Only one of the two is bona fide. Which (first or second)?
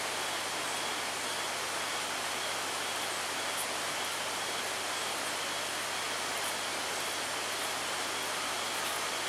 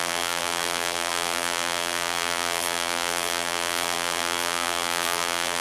first